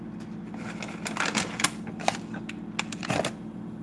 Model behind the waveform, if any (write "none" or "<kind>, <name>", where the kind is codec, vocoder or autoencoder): none